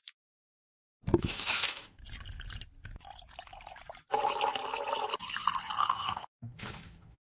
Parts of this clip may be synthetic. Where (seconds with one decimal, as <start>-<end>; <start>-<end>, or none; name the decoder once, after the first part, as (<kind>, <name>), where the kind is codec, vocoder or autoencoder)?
1.2-2.0 (autoencoder, DAC-VAE); 5.8-7.3